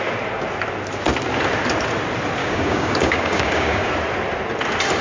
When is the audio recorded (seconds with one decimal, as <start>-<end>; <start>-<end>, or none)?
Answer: 0.0-2.4; 3.9-5.0